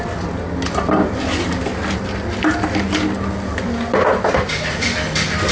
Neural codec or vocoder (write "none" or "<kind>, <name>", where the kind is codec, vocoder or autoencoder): none